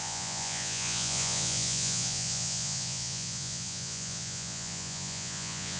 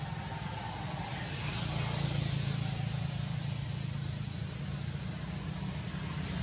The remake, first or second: first